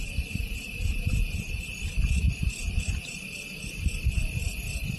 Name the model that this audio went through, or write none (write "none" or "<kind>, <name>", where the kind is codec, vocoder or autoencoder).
vocoder, BigVGAN v2